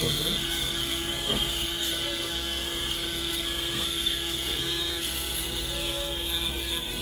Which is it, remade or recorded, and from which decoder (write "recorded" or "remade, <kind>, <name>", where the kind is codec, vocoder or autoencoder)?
remade, codec, SNAC